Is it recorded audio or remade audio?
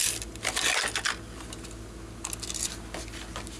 recorded